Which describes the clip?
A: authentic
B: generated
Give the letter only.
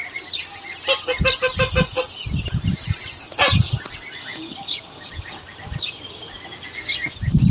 A